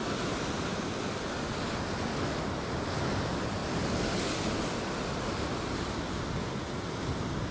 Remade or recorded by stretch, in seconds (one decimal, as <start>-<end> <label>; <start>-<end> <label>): 0.0-7.5 recorded